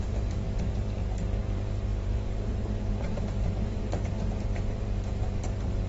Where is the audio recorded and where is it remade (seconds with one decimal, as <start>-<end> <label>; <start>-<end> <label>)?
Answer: 0.0-0.7 remade; 0.7-1.4 recorded; 1.4-5.9 remade